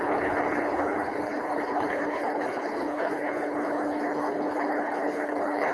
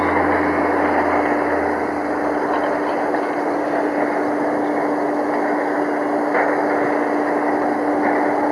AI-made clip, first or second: first